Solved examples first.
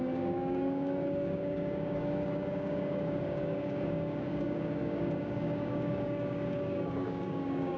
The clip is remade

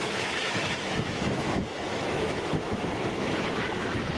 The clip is remade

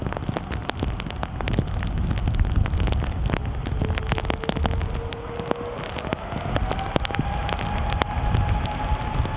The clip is recorded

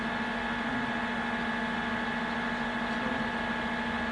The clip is recorded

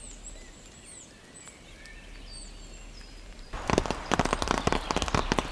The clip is recorded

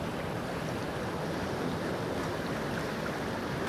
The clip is recorded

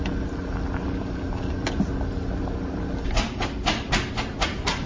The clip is recorded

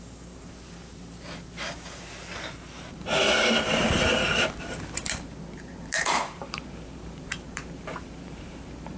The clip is remade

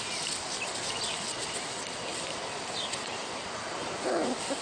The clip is recorded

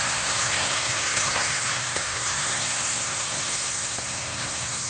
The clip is remade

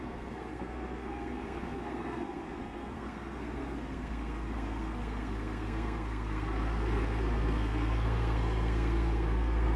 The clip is remade